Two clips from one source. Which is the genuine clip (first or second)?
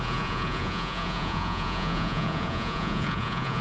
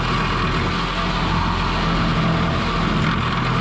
second